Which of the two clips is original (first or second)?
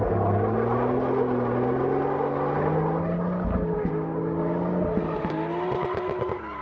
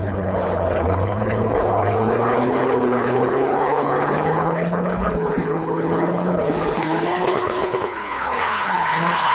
first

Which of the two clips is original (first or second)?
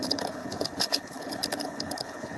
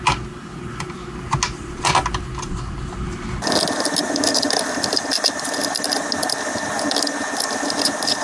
second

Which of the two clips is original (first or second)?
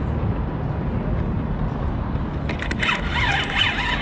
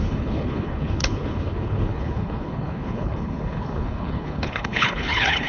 first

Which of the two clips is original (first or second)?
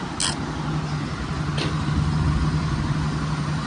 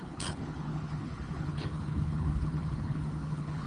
first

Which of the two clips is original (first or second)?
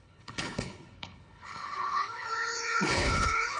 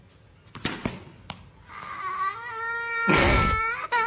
second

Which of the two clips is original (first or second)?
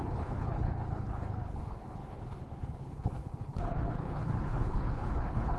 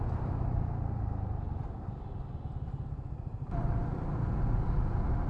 second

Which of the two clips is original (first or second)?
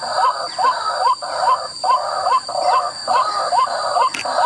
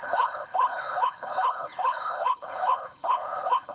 first